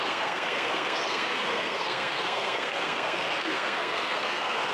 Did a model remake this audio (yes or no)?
yes